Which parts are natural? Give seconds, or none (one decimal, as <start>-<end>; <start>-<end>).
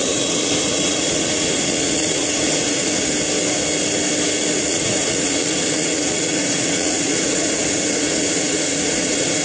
3.1-4.6